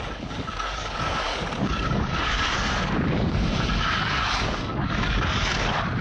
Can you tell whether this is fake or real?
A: fake